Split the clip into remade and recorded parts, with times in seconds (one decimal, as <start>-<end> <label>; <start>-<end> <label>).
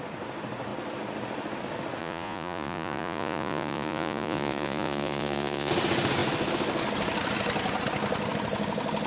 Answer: 0.0-2.0 recorded; 2.0-5.7 remade; 5.7-9.1 recorded